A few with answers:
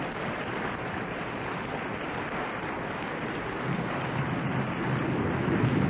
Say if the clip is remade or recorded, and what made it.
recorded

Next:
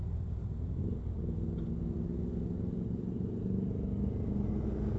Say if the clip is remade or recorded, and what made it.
recorded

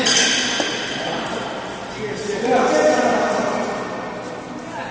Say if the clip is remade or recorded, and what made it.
recorded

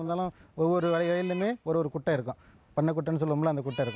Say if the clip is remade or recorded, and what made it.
recorded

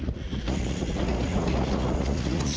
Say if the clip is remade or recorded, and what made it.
remade, vocoder, Vocos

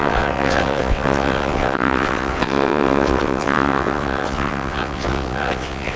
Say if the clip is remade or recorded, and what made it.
remade, vocoder, WaveNeXt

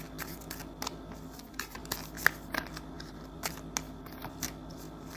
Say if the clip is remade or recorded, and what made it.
recorded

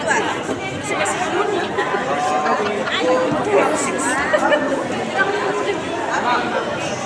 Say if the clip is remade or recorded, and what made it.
recorded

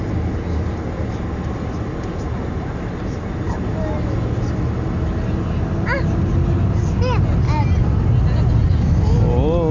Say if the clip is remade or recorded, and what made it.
recorded